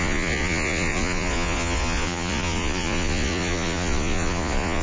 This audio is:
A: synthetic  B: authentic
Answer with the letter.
A